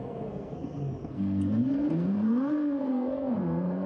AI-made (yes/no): yes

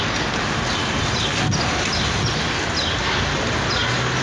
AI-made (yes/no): no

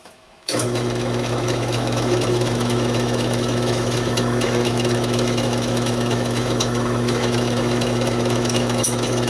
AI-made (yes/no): yes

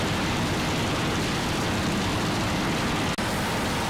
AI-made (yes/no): no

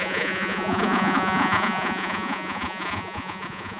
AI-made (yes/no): yes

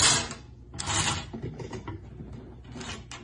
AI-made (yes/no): no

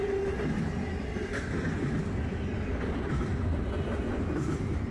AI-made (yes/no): no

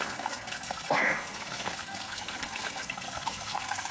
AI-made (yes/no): yes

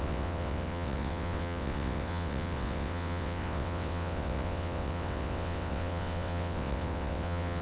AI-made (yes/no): yes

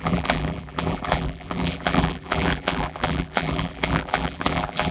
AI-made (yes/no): yes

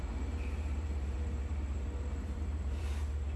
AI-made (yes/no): yes